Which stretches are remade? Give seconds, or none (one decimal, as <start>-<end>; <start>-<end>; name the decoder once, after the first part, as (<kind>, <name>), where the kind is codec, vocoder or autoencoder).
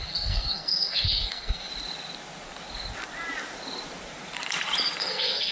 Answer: 0.0-1.7 (codec, SNAC); 5.0-5.5